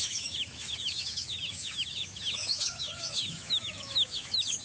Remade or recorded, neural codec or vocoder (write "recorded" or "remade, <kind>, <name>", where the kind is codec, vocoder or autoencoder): remade, autoencoder, DAC-VAE